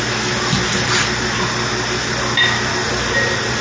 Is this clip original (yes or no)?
yes